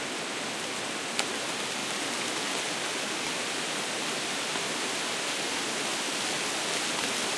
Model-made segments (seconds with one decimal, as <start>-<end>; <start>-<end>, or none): none